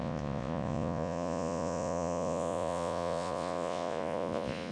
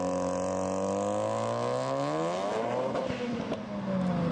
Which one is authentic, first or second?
second